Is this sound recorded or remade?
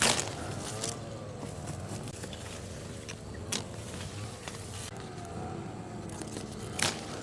recorded